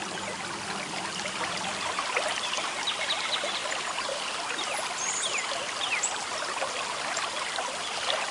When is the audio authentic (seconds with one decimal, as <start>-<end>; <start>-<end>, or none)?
0.0-8.3

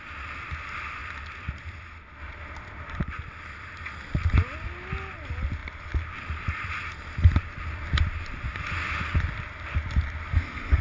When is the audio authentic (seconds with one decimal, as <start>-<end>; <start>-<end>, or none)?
0.0-10.3

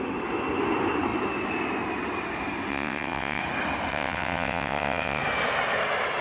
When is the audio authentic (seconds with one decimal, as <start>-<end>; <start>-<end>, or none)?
0.0-2.7; 3.4-3.9; 5.2-6.2

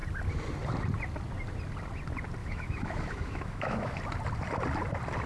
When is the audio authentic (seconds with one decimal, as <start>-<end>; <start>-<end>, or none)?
0.0-2.4; 4.0-5.3

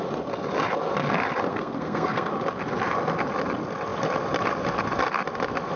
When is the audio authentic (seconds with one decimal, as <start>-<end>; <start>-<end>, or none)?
0.0-1.5; 2.3-5.8

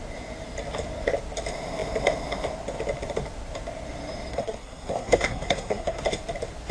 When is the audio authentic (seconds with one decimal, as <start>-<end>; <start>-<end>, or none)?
0.0-4.3; 6.0-6.7

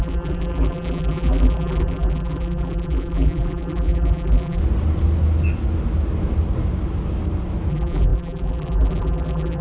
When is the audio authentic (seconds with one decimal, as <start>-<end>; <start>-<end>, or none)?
4.6-7.7